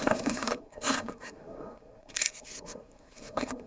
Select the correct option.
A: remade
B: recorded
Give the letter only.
A